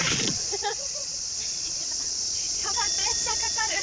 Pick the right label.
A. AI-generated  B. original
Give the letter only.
A